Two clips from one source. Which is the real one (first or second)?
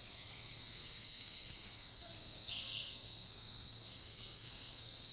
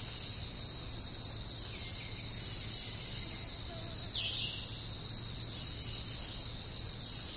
second